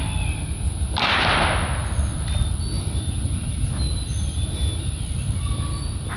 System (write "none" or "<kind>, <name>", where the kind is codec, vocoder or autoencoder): none